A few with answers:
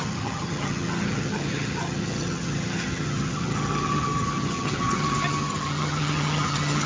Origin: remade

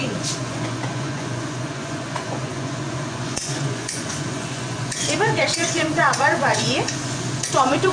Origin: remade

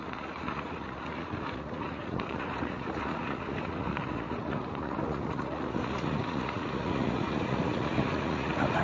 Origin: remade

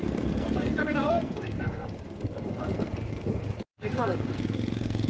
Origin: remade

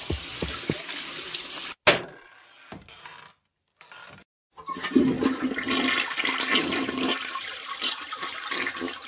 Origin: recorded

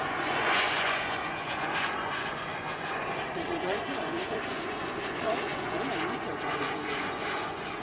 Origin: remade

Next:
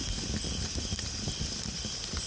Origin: recorded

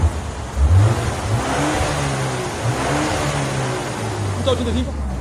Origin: recorded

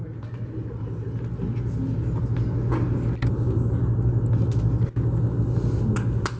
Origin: recorded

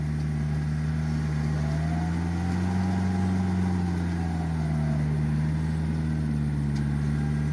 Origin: recorded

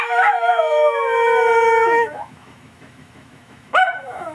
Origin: remade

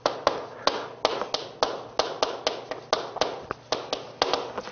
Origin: recorded